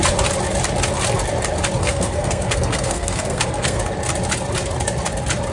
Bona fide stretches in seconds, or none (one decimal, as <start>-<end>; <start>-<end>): 0.0-1.8; 3.8-5.5